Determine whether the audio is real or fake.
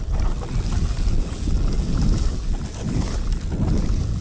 real